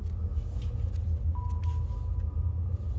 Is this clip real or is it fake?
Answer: real